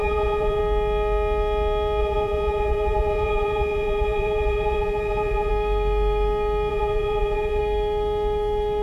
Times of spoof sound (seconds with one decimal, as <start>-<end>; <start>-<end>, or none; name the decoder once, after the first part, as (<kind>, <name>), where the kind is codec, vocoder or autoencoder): 0.0-0.6 (vocoder, Vocos); 2.0-5.5; 6.7-7.6